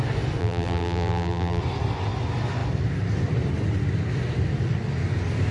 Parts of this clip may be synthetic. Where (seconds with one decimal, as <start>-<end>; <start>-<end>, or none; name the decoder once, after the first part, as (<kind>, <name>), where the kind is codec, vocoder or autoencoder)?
0.4-1.6 (vocoder, BigVGAN v2)